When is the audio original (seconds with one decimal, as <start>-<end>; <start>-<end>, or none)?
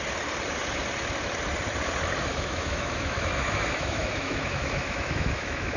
0.0-2.3